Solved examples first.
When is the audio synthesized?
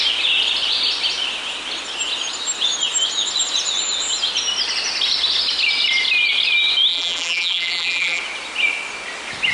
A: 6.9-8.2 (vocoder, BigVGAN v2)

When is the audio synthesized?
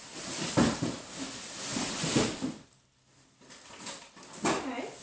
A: none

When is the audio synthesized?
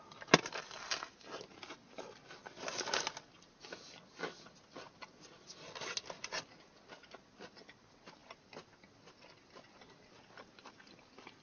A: none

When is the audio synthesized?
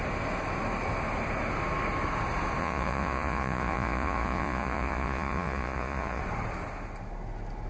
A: 2.6-6.2 (vocoder, Vocos)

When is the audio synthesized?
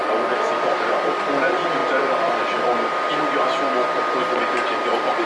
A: none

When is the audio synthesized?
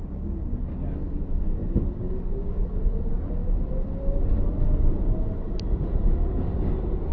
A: none